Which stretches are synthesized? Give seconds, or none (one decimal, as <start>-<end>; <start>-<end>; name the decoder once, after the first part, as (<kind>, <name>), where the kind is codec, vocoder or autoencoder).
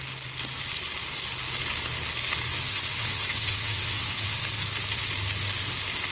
2.5-4.4 (vocoder, WaveNeXt)